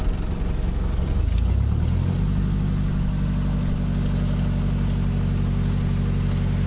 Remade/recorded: recorded